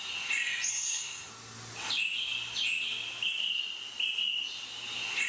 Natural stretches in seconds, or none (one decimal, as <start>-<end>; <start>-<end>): 0.0-0.7; 1.3-5.3